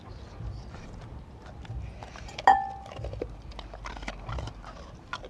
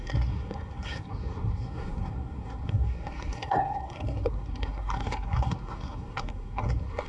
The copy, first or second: second